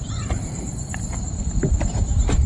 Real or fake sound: fake